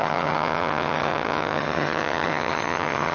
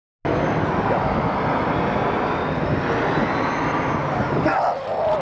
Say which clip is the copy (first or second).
first